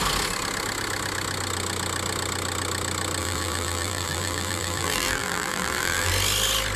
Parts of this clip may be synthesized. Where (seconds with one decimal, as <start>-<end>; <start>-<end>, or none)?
3.2-6.1